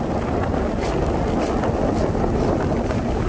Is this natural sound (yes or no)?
yes